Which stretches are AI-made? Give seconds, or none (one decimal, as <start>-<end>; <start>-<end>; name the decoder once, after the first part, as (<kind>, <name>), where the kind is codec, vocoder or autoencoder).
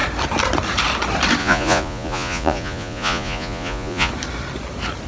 1.4-4.1 (vocoder, Vocos)